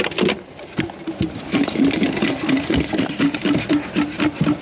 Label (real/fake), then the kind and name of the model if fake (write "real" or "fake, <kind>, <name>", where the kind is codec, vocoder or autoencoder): real